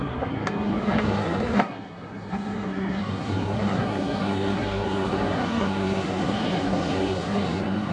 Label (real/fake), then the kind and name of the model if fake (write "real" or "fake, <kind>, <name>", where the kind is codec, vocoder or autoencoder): fake, codec, SNAC